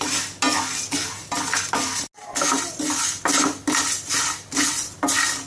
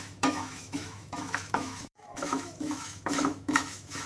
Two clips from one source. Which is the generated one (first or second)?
second